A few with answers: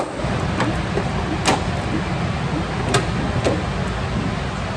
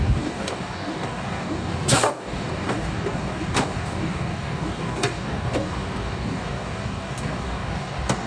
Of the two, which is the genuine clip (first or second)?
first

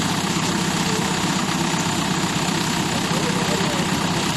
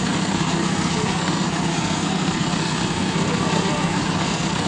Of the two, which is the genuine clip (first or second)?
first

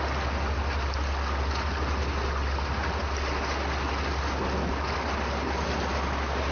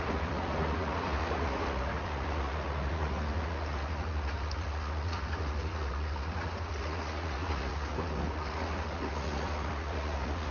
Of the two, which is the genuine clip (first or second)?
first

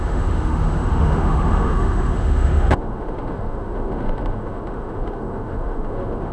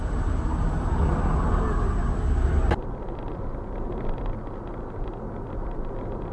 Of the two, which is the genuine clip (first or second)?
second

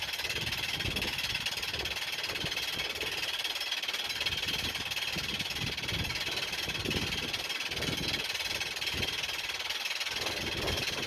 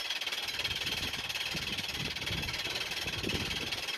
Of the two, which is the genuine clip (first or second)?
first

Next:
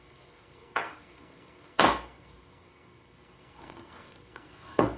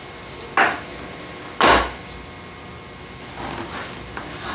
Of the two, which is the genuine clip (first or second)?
second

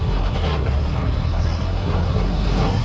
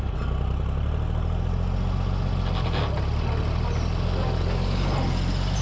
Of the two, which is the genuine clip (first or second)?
second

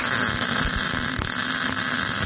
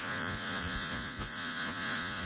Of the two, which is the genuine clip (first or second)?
first